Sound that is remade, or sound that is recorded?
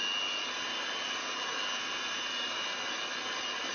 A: recorded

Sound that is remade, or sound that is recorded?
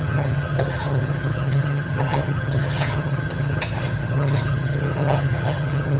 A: remade